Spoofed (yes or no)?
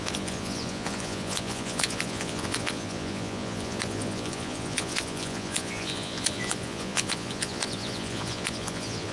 yes